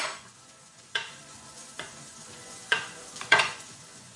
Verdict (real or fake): fake